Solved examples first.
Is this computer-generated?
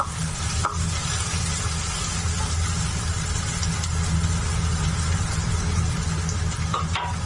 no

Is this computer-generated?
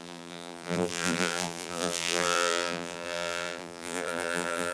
yes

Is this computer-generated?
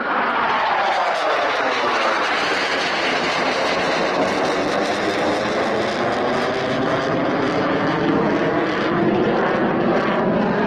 no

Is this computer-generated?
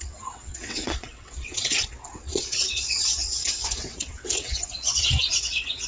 yes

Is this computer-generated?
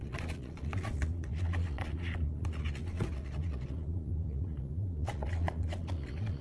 yes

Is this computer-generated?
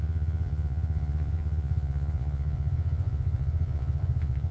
yes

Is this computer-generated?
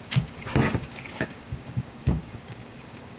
yes